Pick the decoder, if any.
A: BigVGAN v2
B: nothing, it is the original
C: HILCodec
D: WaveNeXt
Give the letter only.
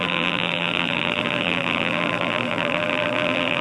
A